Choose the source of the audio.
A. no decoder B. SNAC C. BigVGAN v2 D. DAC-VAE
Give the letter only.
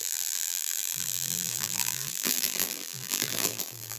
C